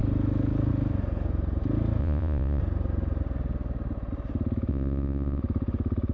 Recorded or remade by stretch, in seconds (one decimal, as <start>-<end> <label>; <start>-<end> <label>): 0.0-2.0 recorded; 2.0-2.6 remade; 2.6-4.7 recorded; 4.7-5.4 remade; 5.4-6.1 recorded